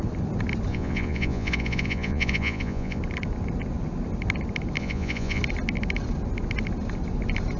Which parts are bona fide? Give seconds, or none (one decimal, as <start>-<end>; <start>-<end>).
0.0-0.7; 3.0-4.8; 5.4-7.6